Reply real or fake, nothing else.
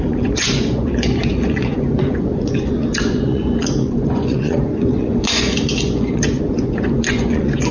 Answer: fake